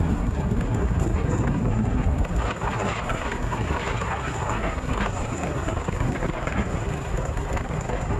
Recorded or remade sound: remade